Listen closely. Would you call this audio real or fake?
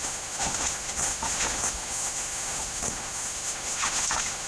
fake